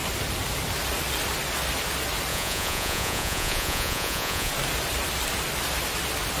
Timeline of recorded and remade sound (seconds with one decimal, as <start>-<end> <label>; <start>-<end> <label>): 0.0-2.3 recorded; 2.3-4.5 remade; 4.5-6.4 recorded